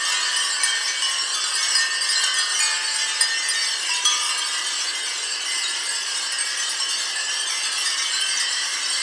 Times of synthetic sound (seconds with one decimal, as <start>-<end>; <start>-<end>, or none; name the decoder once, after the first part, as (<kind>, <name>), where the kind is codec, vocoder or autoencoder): 3.6-9.0 (vocoder, BigVGAN v2)